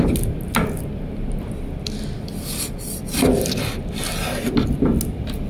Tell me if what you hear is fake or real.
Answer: real